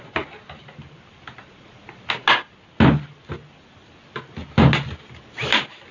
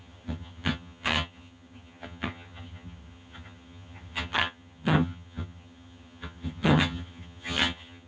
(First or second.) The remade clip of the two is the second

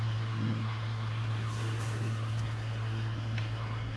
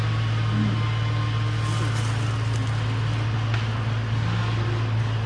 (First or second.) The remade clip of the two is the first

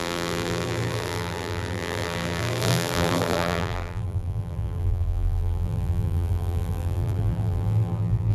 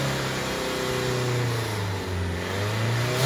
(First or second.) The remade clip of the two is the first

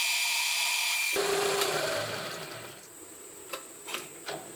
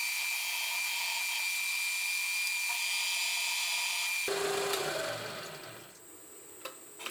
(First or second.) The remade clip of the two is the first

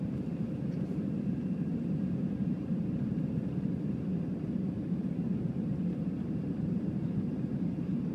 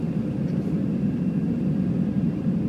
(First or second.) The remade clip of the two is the first